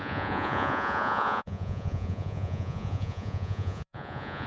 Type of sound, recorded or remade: remade